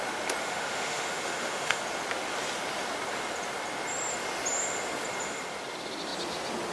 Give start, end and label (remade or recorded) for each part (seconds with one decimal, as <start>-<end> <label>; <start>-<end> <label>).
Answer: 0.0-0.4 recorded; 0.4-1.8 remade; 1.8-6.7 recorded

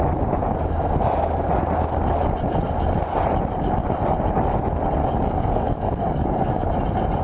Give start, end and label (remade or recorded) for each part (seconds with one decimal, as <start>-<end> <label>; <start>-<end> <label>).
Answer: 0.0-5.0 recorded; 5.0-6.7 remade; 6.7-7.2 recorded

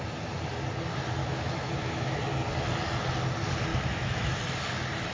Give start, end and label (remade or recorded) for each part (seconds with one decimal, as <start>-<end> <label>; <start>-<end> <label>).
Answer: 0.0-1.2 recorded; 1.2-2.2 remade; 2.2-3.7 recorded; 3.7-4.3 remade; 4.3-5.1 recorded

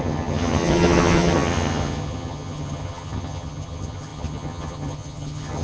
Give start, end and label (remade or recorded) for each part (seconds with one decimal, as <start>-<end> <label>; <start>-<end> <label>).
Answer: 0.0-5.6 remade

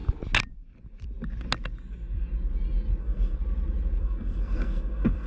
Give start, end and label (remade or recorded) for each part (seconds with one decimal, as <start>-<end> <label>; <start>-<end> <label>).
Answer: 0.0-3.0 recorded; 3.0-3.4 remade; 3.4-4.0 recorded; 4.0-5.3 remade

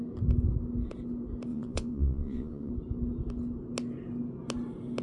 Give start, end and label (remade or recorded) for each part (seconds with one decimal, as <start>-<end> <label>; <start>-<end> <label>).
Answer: 0.0-1.5 recorded; 1.5-2.7 remade; 2.7-5.0 recorded

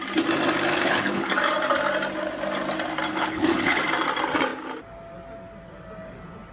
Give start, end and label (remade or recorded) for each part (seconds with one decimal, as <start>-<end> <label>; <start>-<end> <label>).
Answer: 0.0-0.7 recorded; 0.7-1.3 remade; 1.3-3.1 recorded; 3.1-3.8 remade; 3.8-6.5 recorded

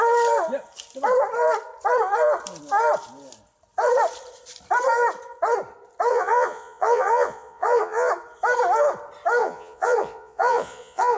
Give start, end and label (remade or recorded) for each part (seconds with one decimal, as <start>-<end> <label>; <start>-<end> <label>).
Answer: 0.0-6.1 recorded; 6.1-8.1 remade; 8.1-9.4 recorded; 9.4-11.2 remade